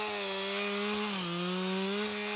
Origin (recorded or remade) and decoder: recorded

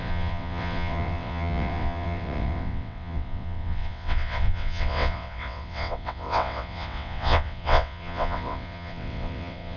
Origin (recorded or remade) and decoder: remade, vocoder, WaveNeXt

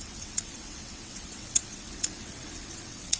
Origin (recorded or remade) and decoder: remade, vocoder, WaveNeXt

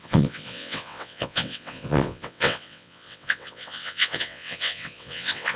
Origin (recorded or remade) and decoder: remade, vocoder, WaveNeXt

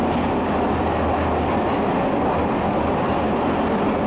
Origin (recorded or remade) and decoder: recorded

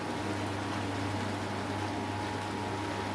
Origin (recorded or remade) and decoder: recorded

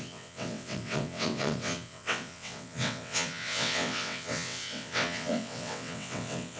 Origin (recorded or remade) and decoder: remade, vocoder, WaveNeXt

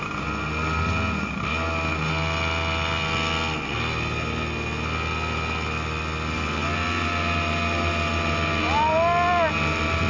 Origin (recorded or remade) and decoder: recorded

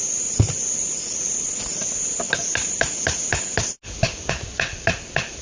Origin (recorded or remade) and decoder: recorded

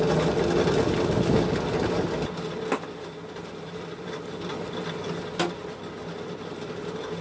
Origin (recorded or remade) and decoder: recorded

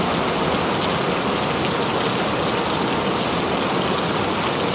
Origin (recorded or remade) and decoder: recorded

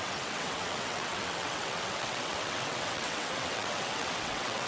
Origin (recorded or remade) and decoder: remade, vocoder, WaveNeXt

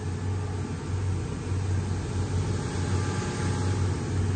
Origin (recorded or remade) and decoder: recorded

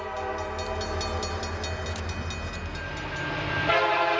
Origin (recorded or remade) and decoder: recorded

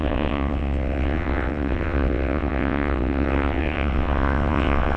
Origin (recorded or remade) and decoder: remade, vocoder, WaveNeXt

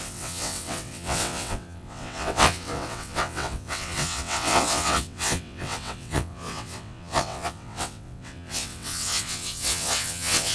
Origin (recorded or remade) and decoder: remade, vocoder, WaveNeXt